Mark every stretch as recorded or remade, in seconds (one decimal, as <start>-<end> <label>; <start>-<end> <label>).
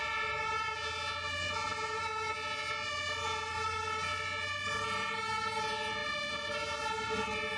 0.0-7.6 recorded